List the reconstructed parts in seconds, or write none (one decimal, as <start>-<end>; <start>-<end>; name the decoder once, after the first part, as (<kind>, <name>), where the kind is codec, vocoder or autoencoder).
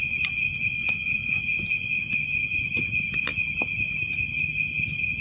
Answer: 0.8-1.4 (vocoder, Vocos)